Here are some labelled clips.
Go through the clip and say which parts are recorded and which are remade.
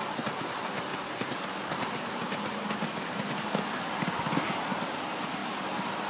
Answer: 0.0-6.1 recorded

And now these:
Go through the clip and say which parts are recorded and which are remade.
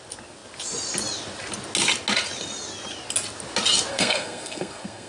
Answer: 0.0-3.9 recorded; 3.9-5.1 remade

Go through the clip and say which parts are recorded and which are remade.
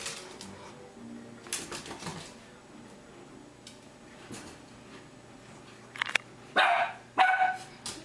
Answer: 0.0-8.0 recorded